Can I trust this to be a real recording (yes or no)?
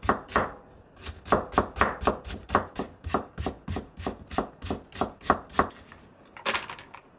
yes